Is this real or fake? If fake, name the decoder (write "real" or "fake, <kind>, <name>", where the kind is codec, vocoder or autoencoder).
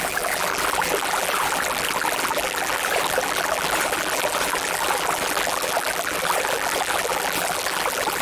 fake, vocoder, BigVGAN v2